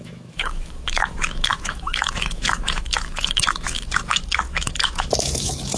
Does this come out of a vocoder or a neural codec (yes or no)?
yes